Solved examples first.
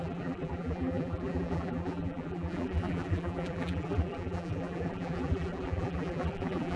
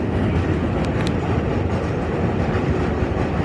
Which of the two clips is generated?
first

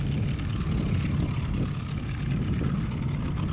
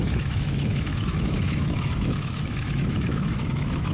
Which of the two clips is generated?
second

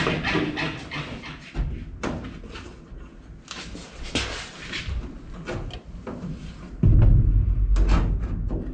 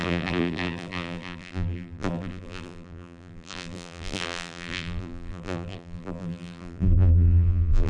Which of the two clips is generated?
second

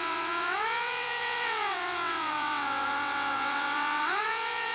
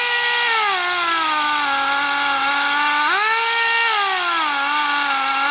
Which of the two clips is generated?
first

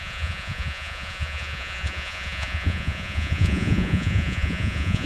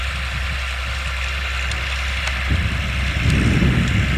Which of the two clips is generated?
first